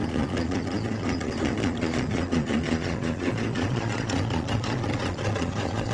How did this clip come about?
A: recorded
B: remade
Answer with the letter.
B